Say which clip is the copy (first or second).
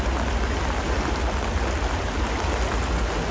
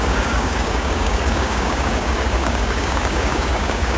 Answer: second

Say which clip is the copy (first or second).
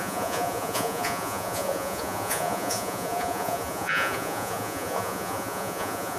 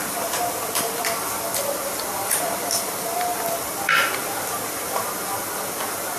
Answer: first